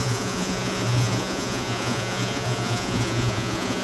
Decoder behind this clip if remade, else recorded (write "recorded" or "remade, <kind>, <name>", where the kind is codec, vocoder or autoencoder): remade, vocoder, Vocos